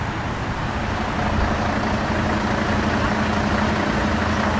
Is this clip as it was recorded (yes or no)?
yes